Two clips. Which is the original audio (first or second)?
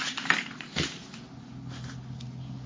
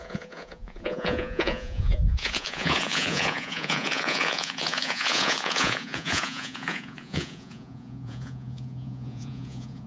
first